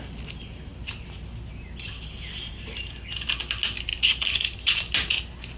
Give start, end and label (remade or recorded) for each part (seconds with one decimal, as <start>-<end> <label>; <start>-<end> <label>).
0.0-5.6 recorded